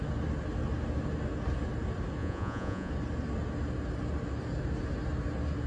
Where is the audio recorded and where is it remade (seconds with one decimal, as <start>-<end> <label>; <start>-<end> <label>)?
0.0-2.2 recorded; 2.2-2.9 remade; 2.9-5.7 recorded